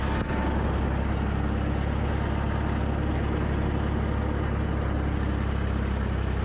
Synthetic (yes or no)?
no